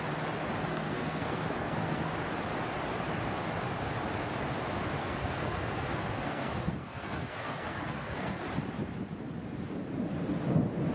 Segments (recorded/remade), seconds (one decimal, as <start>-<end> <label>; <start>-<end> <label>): 0.0-0.7 recorded; 0.7-2.1 remade; 2.1-5.0 recorded; 5.0-8.4 remade; 8.4-10.9 recorded